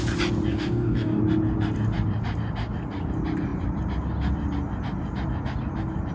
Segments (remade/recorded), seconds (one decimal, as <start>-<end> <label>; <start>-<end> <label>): 0.0-0.5 recorded; 0.5-1.2 remade; 1.2-6.1 recorded